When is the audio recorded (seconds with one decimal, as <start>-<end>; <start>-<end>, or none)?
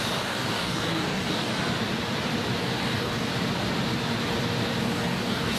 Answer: 1.5-2.6; 3.3-4.8